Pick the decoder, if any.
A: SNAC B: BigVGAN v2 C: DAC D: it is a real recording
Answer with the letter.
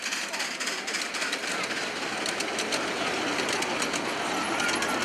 D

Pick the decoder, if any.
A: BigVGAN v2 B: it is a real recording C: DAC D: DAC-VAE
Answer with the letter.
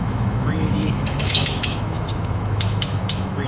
D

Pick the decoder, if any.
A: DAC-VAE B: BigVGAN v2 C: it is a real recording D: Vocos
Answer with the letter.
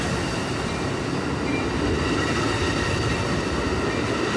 C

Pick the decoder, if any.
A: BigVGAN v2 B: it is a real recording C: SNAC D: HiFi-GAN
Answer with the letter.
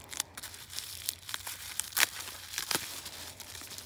A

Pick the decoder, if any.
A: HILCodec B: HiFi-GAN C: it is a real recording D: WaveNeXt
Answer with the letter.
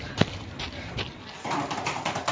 C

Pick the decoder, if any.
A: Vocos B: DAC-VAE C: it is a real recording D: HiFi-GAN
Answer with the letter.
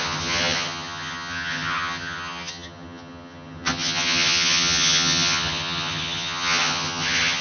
D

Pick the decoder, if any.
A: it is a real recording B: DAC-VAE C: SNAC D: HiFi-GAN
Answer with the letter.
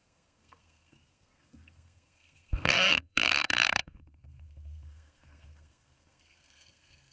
C